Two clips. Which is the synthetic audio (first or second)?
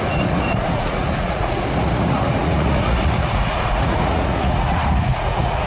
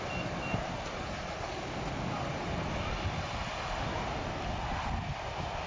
first